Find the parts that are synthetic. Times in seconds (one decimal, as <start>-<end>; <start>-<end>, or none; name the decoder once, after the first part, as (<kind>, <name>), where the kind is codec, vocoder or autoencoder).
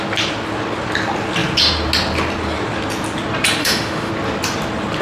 3.6-4.1 (autoencoder, DAC-VAE)